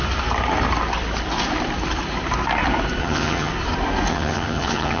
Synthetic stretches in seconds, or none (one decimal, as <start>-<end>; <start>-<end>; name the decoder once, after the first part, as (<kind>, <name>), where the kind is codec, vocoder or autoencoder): 3.0-3.5 (vocoder, HiFi-GAN); 4.1-5.0